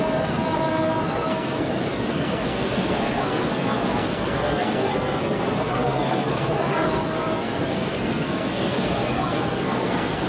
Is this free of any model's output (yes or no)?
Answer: no